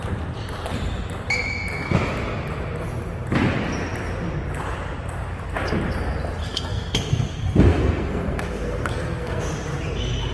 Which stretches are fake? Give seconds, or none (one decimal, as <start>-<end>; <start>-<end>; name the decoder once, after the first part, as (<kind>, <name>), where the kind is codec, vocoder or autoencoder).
6.4-9.4 (codec, SNAC)

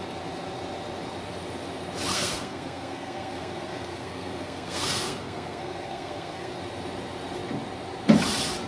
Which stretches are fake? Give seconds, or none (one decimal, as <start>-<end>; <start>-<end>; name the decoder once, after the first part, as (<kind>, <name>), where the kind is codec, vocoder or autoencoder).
2.1-6.5 (codec, SNAC)